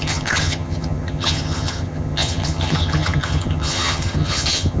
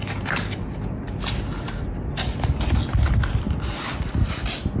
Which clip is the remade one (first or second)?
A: first